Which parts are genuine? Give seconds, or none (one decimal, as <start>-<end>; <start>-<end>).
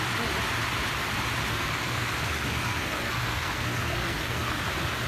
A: 0.0-1.5; 4.6-5.1